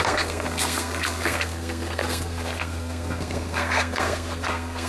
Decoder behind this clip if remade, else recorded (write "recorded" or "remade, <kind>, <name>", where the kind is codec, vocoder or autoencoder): remade, codec, SNAC